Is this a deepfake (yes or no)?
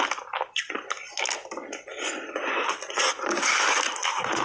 no